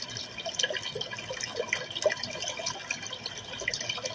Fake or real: real